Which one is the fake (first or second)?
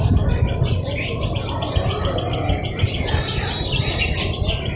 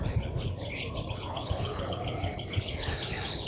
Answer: second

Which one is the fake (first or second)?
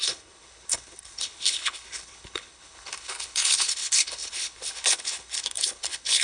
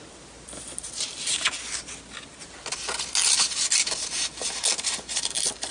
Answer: first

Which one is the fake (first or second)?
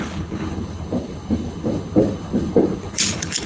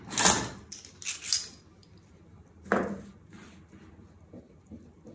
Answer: first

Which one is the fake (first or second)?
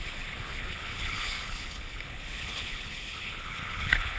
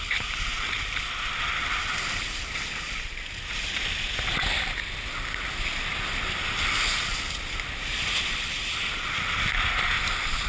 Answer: first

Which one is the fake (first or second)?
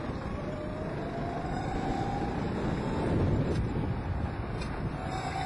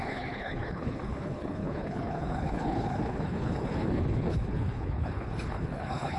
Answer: second